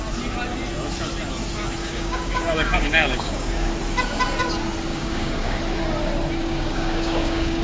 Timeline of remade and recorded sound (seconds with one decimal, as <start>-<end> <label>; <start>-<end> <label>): 0.0-1.8 recorded; 1.8-3.7 remade; 3.7-4.9 recorded; 4.9-5.6 remade; 5.6-6.4 recorded; 6.4-7.6 remade